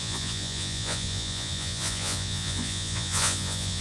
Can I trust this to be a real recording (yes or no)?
no